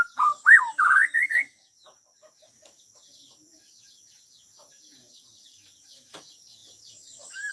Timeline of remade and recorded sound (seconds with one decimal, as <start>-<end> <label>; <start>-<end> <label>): 0.0-7.5 remade